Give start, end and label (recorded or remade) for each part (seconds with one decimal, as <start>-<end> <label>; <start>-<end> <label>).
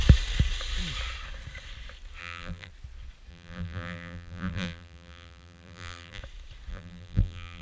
0.0-2.2 recorded; 2.2-2.7 remade; 2.7-3.3 recorded; 3.3-6.2 remade; 6.2-6.7 recorded; 6.7-7.6 remade